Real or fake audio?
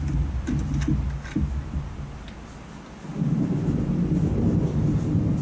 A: real